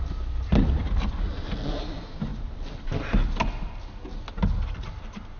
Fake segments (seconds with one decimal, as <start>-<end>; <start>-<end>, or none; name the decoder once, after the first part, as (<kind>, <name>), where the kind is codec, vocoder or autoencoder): none